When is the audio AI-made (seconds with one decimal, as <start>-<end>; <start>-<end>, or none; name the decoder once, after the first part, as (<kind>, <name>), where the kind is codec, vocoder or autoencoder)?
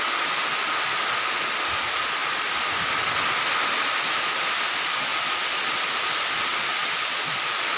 none